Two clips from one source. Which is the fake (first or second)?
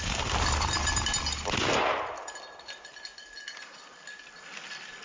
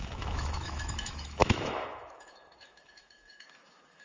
second